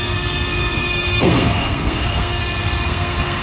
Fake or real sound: fake